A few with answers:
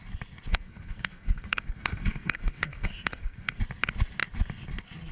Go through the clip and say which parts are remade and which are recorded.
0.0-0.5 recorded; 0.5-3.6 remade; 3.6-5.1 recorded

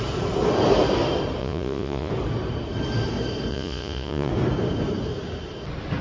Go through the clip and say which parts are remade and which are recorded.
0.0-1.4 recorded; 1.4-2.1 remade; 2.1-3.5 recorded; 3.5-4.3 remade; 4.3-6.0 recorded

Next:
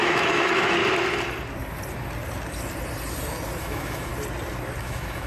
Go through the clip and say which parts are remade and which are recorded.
0.0-0.8 remade; 0.8-3.6 recorded; 3.6-4.1 remade; 4.1-4.8 recorded; 4.8-5.3 remade